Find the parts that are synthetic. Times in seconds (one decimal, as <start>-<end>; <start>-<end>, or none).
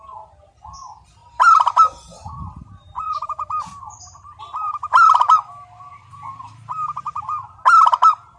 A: 1.2-4.4; 5.9-7.6